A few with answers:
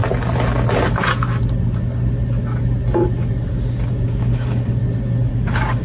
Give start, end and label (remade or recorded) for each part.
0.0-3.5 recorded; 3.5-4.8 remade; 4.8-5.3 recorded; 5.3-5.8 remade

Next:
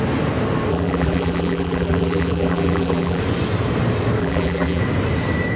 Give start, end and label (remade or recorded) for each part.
0.0-0.7 recorded; 0.7-3.2 remade; 3.2-4.2 recorded; 4.2-4.8 remade; 4.8-5.6 recorded

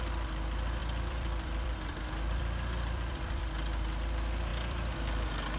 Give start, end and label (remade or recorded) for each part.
0.0-0.8 recorded; 0.8-3.4 remade; 3.4-4.5 recorded; 4.5-5.6 remade

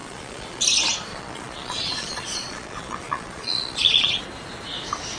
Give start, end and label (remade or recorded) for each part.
0.0-0.6 remade; 0.6-1.1 recorded; 1.1-4.2 remade; 4.2-5.2 recorded

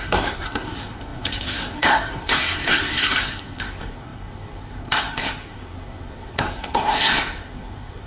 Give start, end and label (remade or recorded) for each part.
0.0-8.1 remade

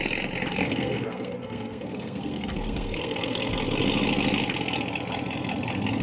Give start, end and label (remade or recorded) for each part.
0.0-0.5 recorded; 0.5-3.5 remade; 3.5-6.0 recorded

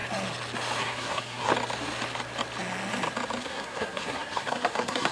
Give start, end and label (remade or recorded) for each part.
0.0-0.8 recorded; 0.8-1.5 remade; 1.5-3.4 recorded; 3.4-5.1 remade